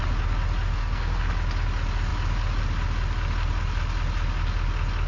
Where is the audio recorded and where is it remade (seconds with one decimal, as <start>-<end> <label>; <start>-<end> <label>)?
0.0-0.7 recorded; 0.7-1.3 remade; 1.3-5.1 recorded